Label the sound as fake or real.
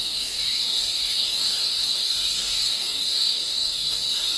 fake